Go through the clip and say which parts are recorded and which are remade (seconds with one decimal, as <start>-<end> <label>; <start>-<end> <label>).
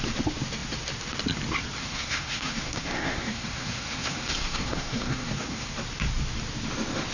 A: 0.0-1.8 recorded; 1.8-5.7 remade; 5.7-7.1 recorded